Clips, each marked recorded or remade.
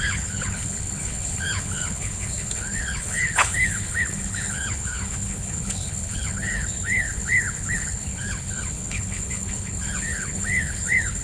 remade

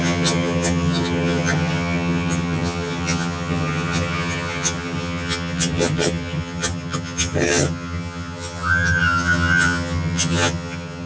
remade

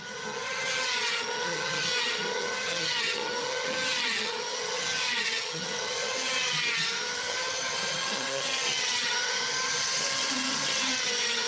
remade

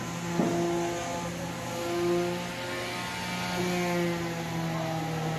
recorded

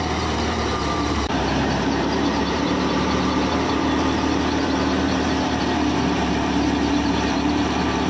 remade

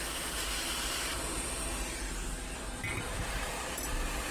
recorded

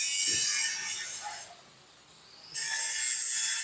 recorded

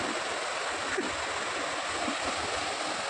recorded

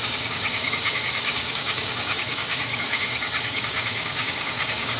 remade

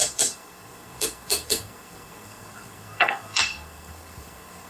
remade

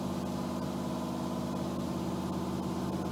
recorded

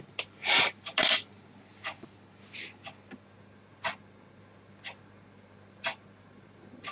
recorded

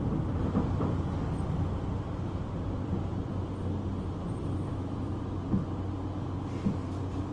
recorded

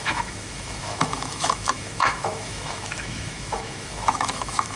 remade